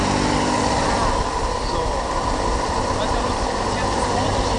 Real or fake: real